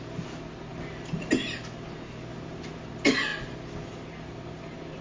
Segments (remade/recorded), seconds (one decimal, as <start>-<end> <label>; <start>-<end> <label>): 0.0-0.7 recorded; 0.7-1.3 remade; 1.3-3.3 recorded; 3.3-5.0 remade